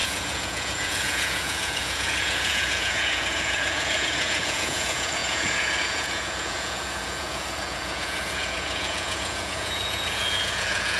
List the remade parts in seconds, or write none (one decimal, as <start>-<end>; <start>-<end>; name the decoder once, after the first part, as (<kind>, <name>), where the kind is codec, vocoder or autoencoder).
0.0-11.0 (vocoder, Vocos)